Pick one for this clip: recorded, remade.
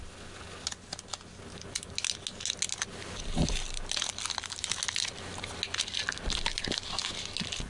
recorded